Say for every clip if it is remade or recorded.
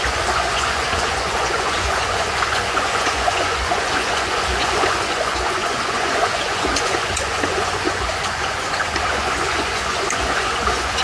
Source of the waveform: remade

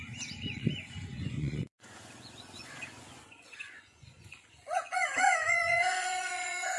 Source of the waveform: remade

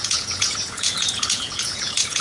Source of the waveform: remade